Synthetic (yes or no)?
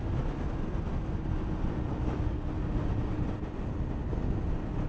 no